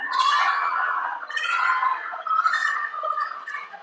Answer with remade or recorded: remade